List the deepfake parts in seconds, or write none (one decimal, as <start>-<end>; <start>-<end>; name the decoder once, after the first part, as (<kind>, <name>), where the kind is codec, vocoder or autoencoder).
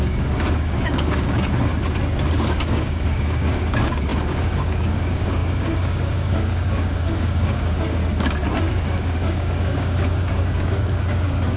0.0-1.7 (codec, DAC); 2.3-8.0; 8.6-11.6